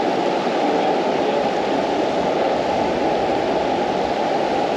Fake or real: real